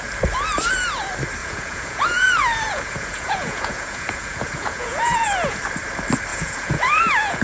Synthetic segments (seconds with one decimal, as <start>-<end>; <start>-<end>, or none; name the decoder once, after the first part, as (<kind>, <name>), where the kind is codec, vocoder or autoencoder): 1.4-5.6 (vocoder, Vocos); 6.3-7.4